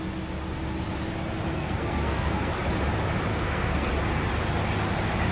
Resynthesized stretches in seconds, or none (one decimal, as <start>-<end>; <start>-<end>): 1.5-2.5; 3.3-3.9